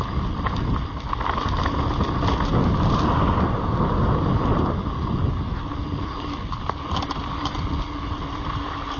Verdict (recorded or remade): recorded